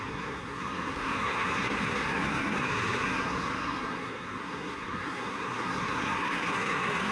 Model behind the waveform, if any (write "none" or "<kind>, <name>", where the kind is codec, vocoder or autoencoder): codec, SNAC